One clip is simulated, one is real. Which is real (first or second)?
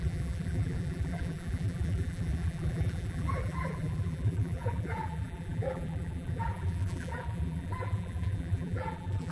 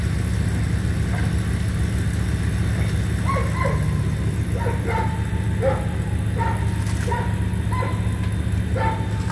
second